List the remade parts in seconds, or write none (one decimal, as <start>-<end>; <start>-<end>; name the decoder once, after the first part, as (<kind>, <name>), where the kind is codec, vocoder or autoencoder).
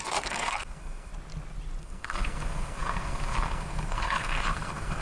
0.0-1.1 (codec, SNAC); 1.8-5.0